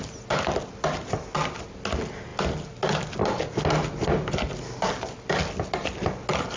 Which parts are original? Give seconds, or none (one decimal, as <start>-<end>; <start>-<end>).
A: 0.0-6.6